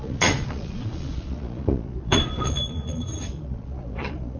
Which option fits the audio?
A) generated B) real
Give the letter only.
A